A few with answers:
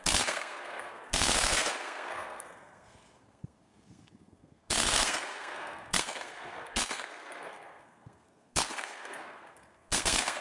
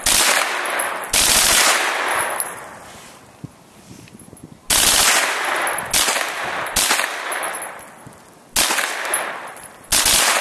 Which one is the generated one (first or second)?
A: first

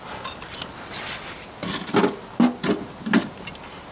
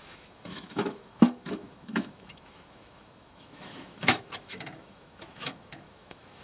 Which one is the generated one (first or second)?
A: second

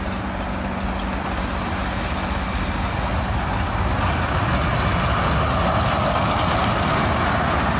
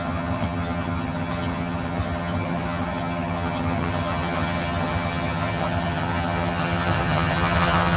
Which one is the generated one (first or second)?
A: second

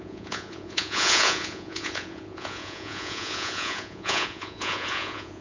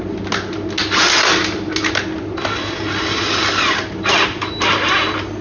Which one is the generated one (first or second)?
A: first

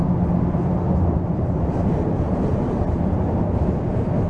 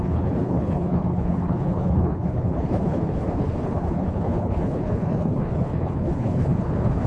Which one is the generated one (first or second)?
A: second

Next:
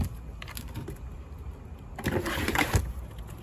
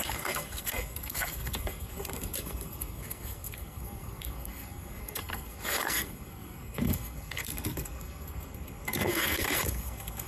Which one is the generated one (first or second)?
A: second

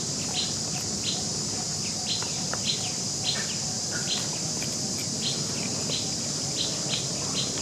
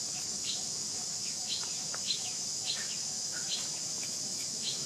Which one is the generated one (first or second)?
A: second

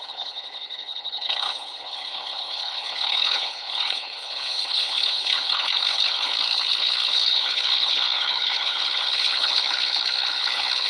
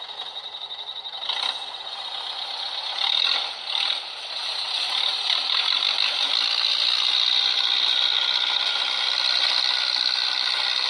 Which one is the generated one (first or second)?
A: first